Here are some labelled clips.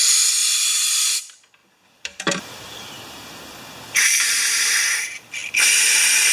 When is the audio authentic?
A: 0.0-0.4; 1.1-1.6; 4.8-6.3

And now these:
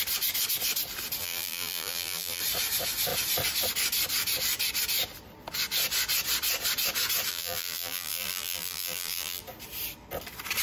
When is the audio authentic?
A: 0.0-1.2; 2.4-7.3; 9.4-10.6

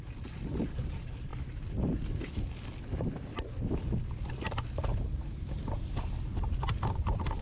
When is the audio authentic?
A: 1.3-5.7; 6.3-6.8